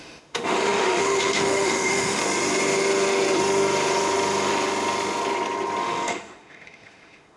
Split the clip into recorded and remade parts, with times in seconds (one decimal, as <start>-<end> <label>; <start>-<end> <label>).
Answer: 0.0-2.2 remade; 2.2-5.8 recorded; 5.8-7.4 remade